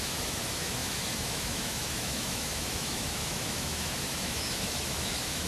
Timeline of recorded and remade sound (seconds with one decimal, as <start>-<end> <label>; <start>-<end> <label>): 0.0-5.5 remade